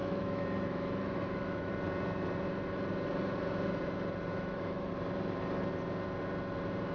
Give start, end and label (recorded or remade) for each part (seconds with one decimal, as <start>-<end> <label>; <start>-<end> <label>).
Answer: 0.0-1.7 remade; 1.7-4.3 recorded; 4.3-4.9 remade; 4.9-6.9 recorded